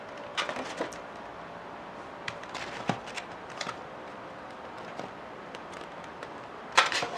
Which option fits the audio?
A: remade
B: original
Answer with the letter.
A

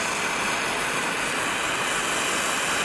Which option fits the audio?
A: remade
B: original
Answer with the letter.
A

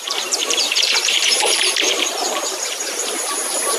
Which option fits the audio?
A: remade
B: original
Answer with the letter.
A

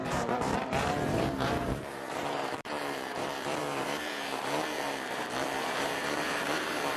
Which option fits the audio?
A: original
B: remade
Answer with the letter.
B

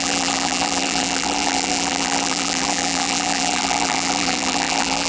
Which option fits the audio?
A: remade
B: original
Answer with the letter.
A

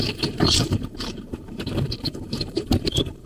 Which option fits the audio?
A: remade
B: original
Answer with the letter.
A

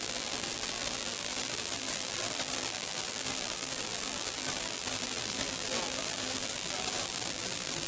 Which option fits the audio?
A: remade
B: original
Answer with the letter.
A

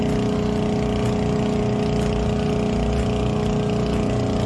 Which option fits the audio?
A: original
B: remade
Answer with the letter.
A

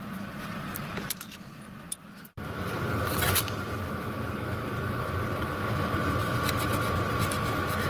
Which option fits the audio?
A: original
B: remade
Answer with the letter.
A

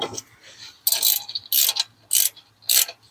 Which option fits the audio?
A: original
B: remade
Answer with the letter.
A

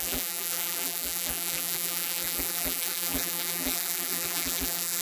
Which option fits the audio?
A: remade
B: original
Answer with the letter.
A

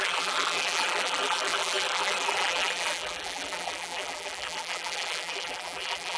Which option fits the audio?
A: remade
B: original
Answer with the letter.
A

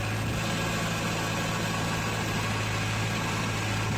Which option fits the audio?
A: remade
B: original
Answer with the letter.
B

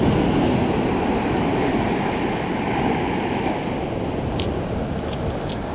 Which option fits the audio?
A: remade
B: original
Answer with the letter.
B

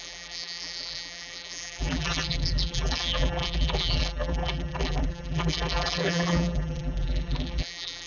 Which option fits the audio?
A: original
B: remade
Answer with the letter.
B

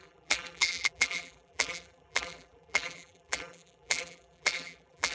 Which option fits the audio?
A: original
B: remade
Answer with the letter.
B